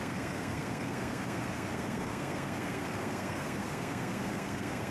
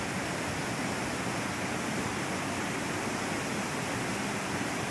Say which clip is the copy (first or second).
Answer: first